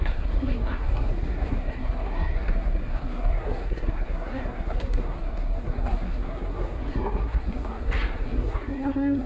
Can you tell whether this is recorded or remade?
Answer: remade